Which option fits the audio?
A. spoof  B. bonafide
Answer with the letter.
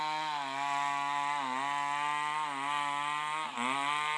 B